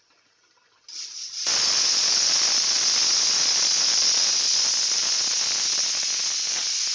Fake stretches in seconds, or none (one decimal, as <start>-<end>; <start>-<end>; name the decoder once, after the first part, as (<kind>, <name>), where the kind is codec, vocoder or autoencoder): none